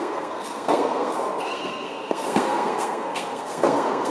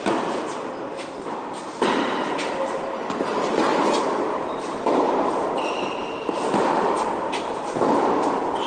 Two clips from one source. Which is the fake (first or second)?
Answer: first